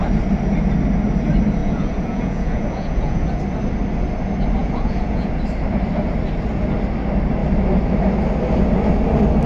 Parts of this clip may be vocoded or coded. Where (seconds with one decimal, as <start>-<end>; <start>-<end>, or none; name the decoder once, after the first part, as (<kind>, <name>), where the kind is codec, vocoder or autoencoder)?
1.6-3.4 (vocoder, Vocos); 4.6-5.3

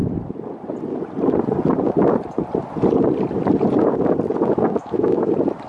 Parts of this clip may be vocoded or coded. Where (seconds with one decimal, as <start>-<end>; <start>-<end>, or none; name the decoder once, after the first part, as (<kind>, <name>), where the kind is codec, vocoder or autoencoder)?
4.8-5.3 (autoencoder, DAC-VAE)

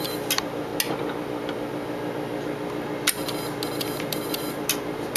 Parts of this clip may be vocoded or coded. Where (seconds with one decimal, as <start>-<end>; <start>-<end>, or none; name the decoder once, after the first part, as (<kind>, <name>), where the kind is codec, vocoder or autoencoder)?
0.0-0.7 (vocoder, BigVGAN v2); 3.8-5.2

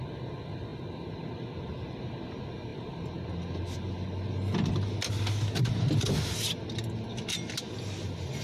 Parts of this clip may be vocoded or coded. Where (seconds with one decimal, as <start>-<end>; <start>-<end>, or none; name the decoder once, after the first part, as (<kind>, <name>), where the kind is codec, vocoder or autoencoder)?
none

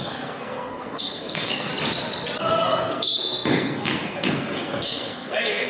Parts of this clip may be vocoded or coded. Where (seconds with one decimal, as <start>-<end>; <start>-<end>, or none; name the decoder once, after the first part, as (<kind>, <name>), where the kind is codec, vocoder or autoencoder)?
0.0-1.7 (codec, SNAC); 2.4-5.7